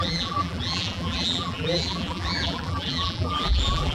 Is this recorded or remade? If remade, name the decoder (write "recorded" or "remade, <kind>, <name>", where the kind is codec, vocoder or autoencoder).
remade, vocoder, BigVGAN v2